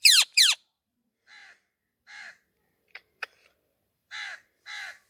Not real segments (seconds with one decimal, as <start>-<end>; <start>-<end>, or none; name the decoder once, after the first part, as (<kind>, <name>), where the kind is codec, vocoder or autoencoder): 0.0-5.1 (vocoder, BigVGAN v2)